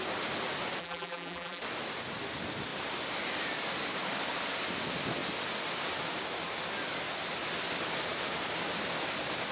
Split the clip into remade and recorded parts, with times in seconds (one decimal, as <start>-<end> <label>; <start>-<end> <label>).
0.0-0.8 recorded; 0.8-1.6 remade; 1.6-9.5 recorded

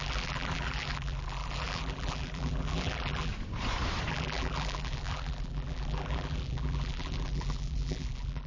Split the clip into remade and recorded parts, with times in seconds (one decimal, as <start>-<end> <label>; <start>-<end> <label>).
0.0-3.3 remade; 3.3-4.1 recorded; 4.1-8.5 remade